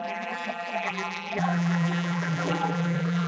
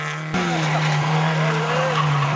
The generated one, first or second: first